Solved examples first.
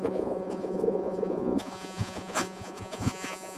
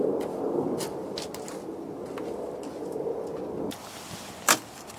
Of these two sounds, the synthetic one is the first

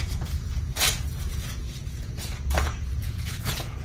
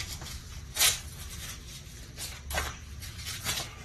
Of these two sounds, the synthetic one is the first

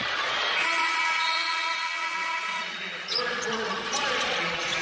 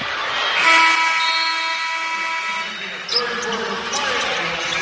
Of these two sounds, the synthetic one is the first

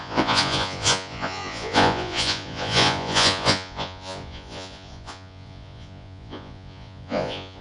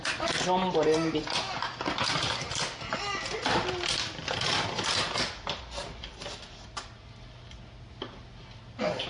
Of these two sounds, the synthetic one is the first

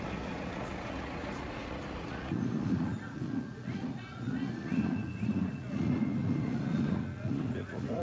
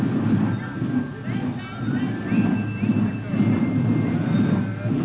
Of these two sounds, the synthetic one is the first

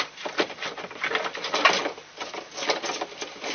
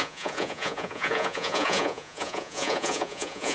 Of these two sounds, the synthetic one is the second